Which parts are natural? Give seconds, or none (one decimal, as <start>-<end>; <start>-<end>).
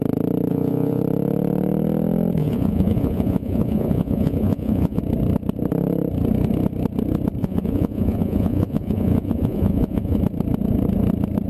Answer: 0.0-0.5; 1.0-2.4; 5.0-7.4; 10.2-11.5